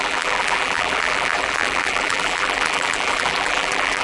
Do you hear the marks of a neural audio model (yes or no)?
yes